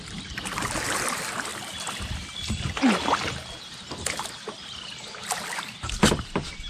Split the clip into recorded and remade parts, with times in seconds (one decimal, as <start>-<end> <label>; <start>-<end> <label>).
0.0-1.5 remade; 1.5-4.5 recorded; 4.5-5.2 remade; 5.2-6.1 recorded; 6.1-6.7 remade